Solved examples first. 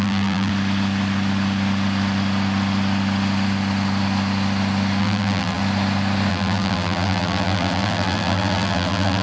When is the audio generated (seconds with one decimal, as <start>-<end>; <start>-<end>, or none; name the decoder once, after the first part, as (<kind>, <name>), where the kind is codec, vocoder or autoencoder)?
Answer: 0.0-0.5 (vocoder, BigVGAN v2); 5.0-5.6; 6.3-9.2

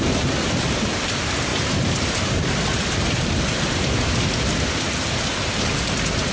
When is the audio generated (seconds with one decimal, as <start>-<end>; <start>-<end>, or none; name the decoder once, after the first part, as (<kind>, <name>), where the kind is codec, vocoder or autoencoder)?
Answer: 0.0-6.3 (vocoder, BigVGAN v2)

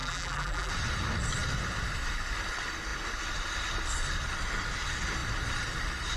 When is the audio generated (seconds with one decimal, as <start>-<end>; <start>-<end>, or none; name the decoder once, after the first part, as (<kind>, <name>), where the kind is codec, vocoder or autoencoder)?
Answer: 0.0-0.7 (vocoder, BigVGAN v2)